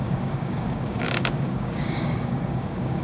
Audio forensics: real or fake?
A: fake